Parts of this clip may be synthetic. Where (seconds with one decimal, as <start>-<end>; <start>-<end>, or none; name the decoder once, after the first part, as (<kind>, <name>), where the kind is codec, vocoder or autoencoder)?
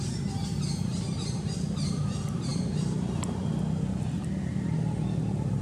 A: none